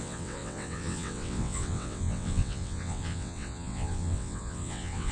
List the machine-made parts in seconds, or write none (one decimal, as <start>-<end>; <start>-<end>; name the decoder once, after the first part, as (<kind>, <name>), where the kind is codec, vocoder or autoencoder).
0.0-5.1 (vocoder, WaveNeXt)